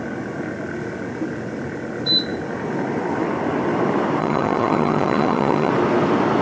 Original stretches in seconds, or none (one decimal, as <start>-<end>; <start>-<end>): 0.0-4.2; 5.7-6.4